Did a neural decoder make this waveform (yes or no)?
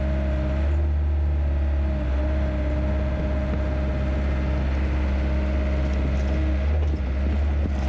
no